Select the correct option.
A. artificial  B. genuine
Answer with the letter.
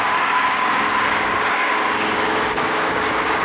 A